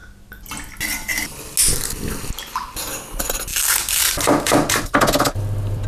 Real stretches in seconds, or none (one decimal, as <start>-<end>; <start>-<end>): 0.0-5.9